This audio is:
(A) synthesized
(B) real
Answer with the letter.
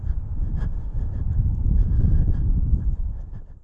A